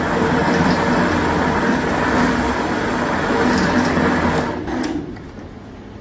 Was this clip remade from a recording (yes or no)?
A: no